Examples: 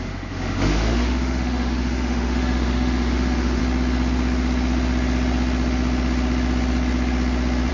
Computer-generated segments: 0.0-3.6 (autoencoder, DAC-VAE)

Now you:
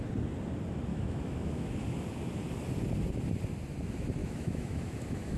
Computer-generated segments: 0.9-1.7 (autoencoder, DAC-VAE); 4.2-5.4

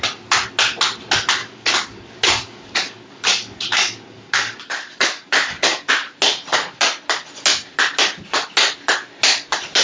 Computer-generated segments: 1.4-5.9 (codec, DAC)

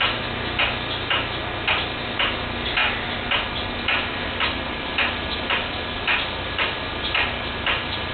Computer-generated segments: none

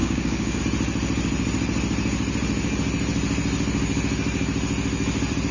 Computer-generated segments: 0.0-0.6 (codec, DAC)